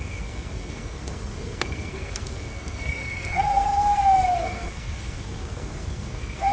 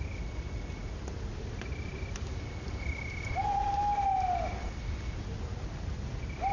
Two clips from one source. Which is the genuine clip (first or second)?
second